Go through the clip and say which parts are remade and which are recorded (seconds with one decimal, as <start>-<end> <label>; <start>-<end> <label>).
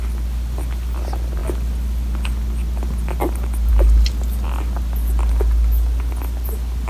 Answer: 0.0-6.9 recorded